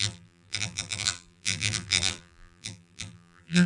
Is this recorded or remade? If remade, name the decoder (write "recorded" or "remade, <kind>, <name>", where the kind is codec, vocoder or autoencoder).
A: remade, vocoder, BigVGAN v2